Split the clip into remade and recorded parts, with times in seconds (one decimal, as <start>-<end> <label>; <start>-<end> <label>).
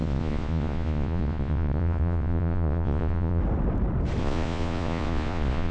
0.0-3.4 remade; 3.4-4.2 recorded; 4.2-5.7 remade